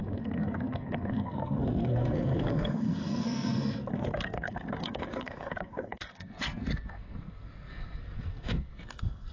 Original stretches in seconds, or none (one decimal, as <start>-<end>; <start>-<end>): none